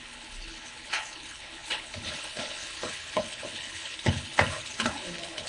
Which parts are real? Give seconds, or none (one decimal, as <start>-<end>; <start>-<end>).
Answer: none